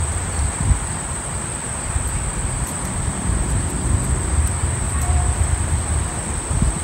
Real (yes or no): yes